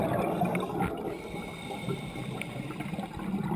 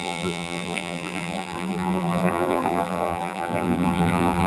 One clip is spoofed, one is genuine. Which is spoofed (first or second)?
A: second